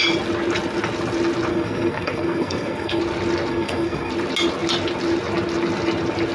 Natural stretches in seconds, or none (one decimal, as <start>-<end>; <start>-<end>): 0.0-1.5; 3.0-3.5; 4.1-6.3

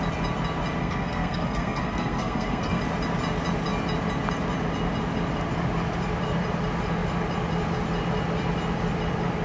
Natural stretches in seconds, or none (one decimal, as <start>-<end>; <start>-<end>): 0.0-0.8; 2.8-9.4